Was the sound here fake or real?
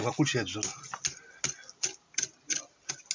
real